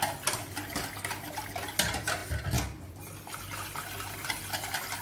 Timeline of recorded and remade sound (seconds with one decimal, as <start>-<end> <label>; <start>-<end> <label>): 0.0-5.0 recorded